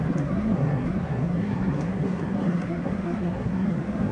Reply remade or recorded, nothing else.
remade